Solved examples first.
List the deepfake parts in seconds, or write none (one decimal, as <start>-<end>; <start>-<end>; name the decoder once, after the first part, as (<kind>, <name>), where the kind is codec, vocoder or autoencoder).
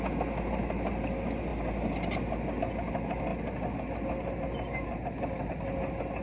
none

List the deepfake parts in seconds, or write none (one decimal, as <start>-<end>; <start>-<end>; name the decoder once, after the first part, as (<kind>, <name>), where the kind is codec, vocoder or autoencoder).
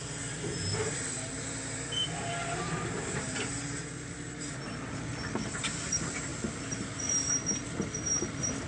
0.0-8.7 (vocoder, BigVGAN v2)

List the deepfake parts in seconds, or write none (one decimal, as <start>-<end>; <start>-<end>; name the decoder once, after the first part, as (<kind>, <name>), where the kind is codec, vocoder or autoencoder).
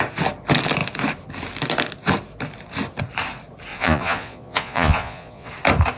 3.7-5.5 (vocoder, Vocos)